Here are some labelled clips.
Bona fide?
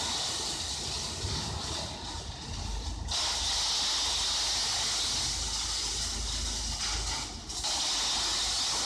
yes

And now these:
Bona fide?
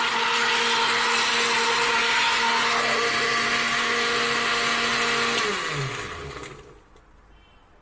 yes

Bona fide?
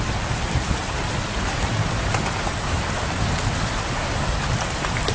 yes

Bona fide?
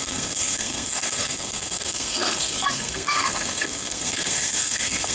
no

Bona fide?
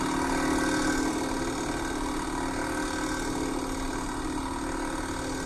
yes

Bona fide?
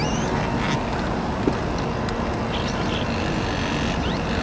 yes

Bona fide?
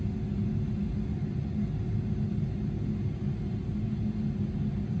yes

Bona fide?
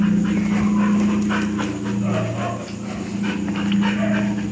yes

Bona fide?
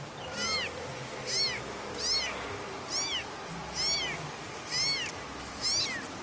yes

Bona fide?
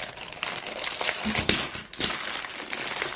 yes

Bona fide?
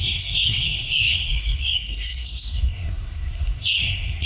no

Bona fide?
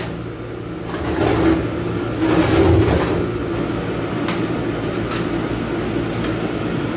yes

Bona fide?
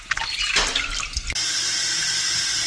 yes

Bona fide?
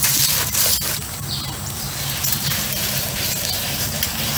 no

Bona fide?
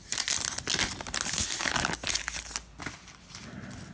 yes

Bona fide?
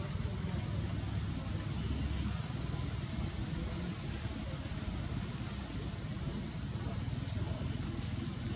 yes